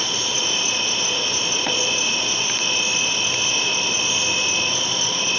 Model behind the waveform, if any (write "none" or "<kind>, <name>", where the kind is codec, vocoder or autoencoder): none